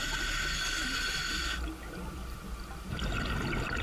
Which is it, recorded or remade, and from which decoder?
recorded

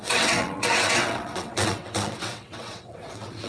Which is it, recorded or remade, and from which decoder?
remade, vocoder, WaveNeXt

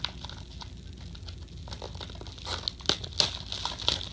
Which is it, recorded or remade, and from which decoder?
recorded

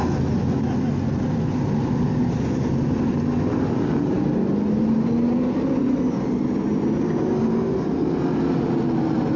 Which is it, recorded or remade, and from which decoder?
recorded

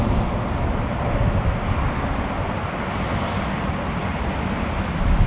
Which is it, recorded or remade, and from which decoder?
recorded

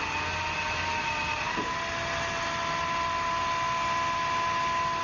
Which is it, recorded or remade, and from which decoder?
recorded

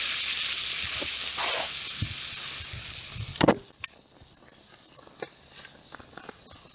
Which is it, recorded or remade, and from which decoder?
recorded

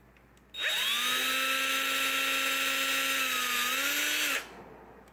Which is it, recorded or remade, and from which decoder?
recorded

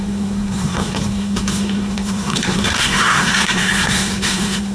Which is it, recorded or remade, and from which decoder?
remade, codec, SNAC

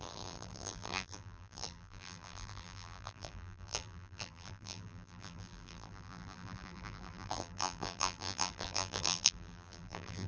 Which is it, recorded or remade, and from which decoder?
remade, vocoder, BigVGAN v2